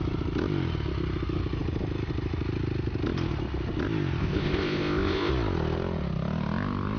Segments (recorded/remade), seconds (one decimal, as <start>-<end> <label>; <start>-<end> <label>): 0.0-4.2 recorded; 4.2-5.3 remade; 5.3-7.0 recorded